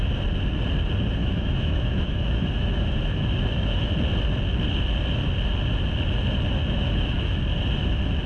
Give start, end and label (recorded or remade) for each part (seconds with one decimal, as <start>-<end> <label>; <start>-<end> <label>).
0.0-1.2 recorded; 1.2-3.9 remade; 3.9-6.6 recorded; 6.6-7.4 remade; 7.4-8.3 recorded